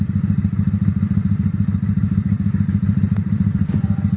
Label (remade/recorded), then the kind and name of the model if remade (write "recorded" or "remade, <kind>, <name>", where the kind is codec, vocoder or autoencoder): remade, vocoder, BigVGAN v2